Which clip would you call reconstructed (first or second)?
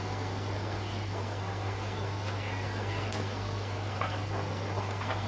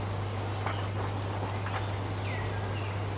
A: first